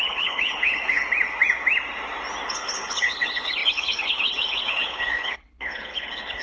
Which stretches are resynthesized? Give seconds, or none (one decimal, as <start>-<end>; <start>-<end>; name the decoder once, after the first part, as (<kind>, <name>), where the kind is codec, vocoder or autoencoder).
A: 0.0-1.0 (codec, HILCodec); 2.5-6.4

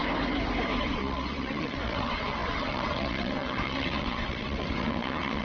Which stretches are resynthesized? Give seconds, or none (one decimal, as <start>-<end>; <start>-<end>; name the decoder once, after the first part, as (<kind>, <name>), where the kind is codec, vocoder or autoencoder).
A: 0.8-5.4 (vocoder, WaveNeXt)

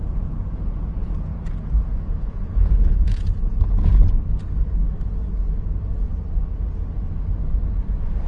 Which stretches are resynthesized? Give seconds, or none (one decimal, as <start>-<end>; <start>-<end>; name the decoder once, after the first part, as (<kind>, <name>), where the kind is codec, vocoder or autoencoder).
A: 0.0-3.9 (vocoder, Vocos)